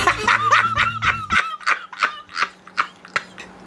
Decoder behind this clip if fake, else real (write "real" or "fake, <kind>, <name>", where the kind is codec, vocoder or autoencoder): real